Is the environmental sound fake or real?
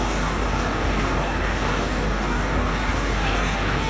fake